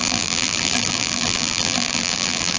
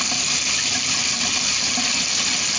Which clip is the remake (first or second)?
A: first